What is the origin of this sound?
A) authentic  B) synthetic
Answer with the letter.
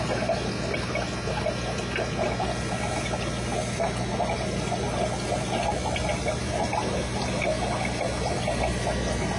A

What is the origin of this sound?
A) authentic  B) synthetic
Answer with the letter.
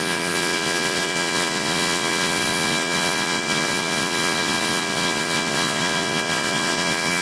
B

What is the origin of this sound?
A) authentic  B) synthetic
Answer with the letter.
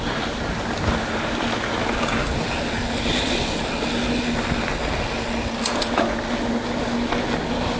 A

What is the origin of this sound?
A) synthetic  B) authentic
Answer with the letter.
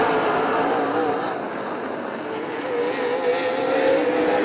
B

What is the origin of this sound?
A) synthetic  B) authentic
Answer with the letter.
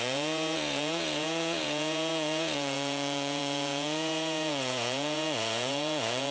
A